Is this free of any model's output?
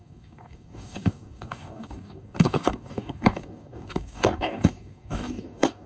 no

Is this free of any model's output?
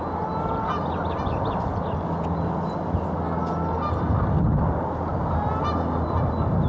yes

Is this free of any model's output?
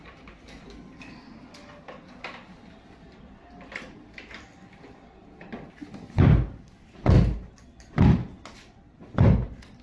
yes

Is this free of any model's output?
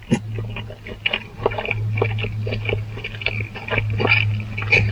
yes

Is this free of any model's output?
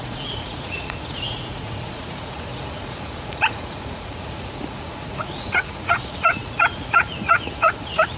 no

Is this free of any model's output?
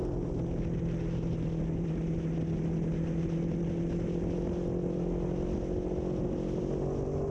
yes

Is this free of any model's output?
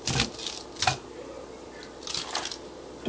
yes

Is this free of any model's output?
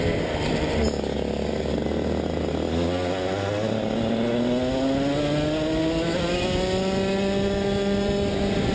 yes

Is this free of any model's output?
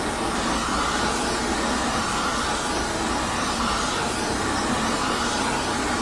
yes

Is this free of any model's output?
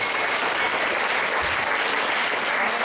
yes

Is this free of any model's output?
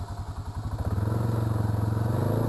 yes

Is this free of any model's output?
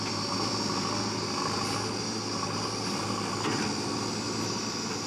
yes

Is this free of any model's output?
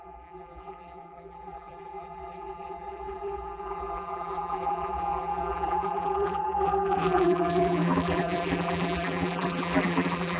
no